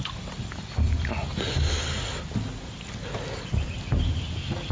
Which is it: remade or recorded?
recorded